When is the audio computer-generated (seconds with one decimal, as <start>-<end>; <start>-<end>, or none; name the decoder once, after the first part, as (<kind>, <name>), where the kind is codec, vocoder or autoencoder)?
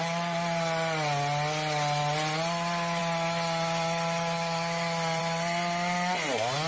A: none